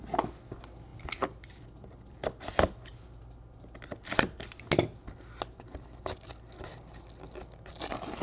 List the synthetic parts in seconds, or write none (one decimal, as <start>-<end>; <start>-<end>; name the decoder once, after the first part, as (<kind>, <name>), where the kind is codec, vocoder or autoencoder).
0.9-2.5 (vocoder, BigVGAN v2)